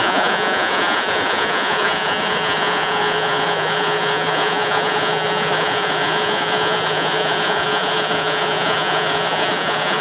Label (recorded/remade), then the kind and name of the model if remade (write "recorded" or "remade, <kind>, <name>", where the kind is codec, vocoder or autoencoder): remade, vocoder, Vocos